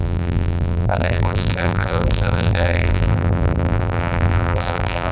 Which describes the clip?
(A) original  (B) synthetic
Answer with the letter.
B